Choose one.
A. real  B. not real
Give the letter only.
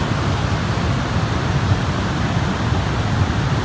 A